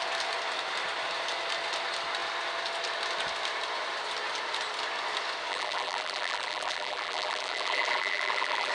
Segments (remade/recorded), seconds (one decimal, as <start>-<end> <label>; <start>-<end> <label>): 0.0-5.5 recorded; 5.5-8.7 remade